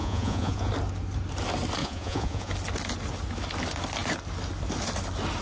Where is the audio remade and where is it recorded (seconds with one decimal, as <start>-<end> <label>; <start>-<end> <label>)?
0.0-0.7 remade; 0.7-1.8 recorded; 1.8-2.5 remade; 2.5-5.4 recorded